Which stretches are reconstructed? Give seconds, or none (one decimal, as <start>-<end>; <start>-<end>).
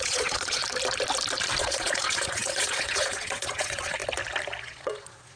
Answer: 0.0-0.6; 1.6-4.0; 4.6-5.4